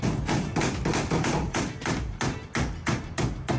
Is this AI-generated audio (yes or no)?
no